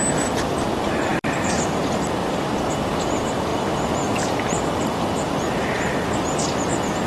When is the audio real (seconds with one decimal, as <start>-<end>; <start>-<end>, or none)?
0.0-1.1; 1.8-3.5; 6.6-7.1